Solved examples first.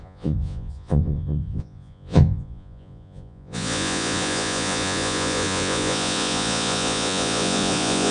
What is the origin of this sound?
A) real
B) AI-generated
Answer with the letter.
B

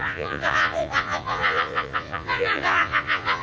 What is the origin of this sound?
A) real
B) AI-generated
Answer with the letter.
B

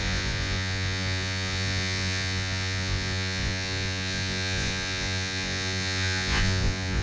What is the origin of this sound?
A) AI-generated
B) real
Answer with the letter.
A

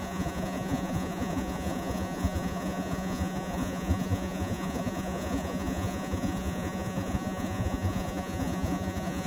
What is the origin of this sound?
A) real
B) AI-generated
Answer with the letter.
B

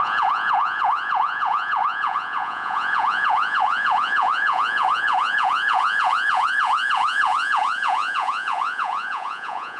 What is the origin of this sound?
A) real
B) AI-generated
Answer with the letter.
B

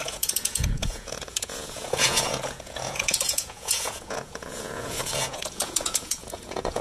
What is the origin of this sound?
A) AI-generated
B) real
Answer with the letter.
A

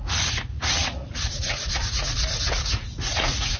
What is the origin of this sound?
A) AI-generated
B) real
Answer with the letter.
A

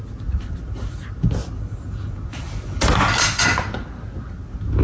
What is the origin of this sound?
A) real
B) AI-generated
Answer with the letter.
A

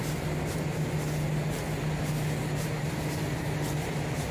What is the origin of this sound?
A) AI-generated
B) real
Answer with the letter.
B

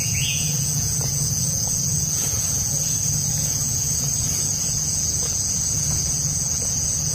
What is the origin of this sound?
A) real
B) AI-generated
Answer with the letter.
B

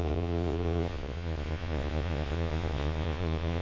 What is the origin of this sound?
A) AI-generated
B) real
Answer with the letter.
A